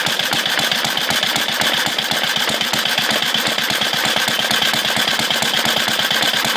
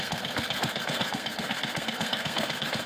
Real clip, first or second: first